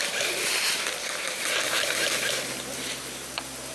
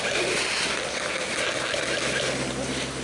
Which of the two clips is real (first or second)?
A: second